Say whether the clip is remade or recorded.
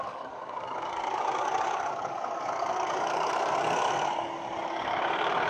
remade